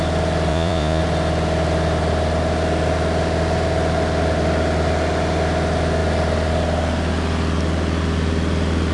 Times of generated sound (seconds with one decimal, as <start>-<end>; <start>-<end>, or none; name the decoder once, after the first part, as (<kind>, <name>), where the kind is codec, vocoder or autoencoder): 0.5-1.0 (vocoder, Vocos)